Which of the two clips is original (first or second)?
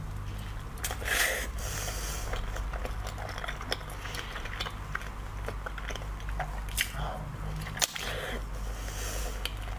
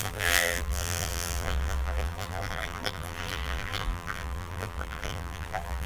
first